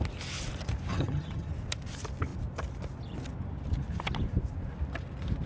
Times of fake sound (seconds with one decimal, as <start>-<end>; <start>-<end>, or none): 0.9-1.5